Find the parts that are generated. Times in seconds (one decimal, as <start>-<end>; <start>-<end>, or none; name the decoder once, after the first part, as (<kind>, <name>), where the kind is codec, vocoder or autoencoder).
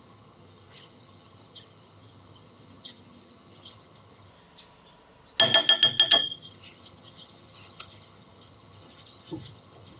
0.0-4.3 (vocoder, HiFi-GAN); 6.1-10.0